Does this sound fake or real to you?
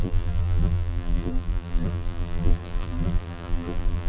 fake